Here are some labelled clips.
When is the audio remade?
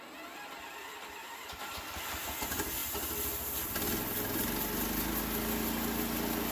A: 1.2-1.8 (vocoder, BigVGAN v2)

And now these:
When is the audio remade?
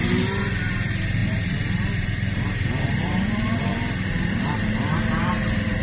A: 0.0-5.8 (vocoder, BigVGAN v2)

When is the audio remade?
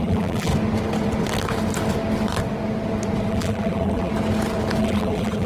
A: 0.0-0.5 (vocoder, BigVGAN v2); 3.3-4.1; 4.8-5.5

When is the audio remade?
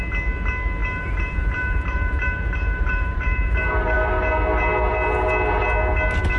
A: 0.8-3.7 (vocoder, BigVGAN v2)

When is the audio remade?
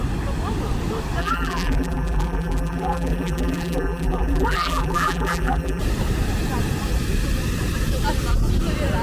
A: 1.2-5.8 (vocoder, BigVGAN v2)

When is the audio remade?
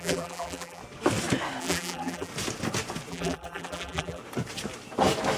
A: 0.0-0.8 (vocoder, BigVGAN v2); 1.6-2.3; 3.1-4.2